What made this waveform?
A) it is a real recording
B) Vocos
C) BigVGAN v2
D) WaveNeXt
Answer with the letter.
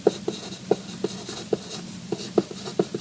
A